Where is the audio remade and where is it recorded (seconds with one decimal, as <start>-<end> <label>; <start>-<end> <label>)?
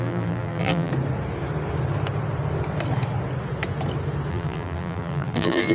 0.0-0.9 remade; 0.9-4.3 recorded; 4.3-5.7 remade